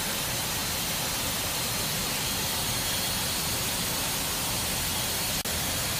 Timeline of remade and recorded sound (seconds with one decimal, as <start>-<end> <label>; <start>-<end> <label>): 0.0-6.0 recorded

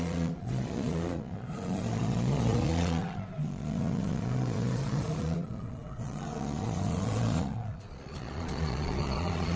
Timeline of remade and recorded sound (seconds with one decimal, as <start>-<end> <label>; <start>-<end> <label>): 0.0-9.6 remade

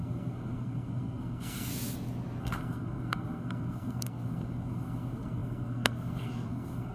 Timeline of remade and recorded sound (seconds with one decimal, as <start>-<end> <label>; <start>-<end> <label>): 0.0-1.7 remade; 1.7-2.4 recorded; 2.4-6.9 remade

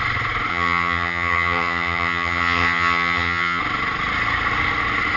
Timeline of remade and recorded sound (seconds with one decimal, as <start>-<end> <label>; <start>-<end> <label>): 0.0-0.5 recorded; 0.5-3.6 remade; 3.6-5.2 recorded

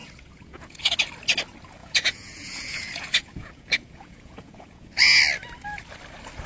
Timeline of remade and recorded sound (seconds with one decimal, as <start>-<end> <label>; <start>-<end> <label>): 0.0-0.9 remade; 0.9-1.8 recorded; 1.8-5.2 remade; 5.2-6.5 recorded

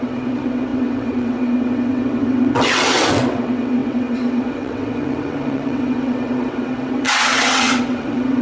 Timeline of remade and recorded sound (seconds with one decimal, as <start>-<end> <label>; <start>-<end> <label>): 0.0-8.4 remade